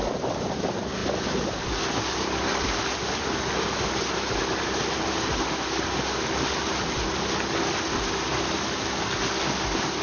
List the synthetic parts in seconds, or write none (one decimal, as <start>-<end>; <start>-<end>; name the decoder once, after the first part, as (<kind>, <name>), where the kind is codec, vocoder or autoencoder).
none